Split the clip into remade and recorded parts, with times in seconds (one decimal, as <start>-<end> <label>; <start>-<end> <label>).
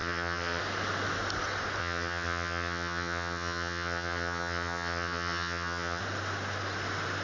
0.0-0.6 remade; 0.6-1.8 recorded; 1.8-6.0 remade; 6.0-7.2 recorded